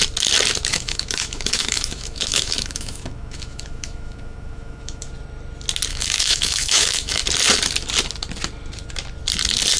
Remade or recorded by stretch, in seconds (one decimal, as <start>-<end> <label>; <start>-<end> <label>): 0.0-0.7 recorded; 0.7-5.1 remade; 5.1-5.9 recorded; 5.9-7.2 remade; 7.2-9.8 recorded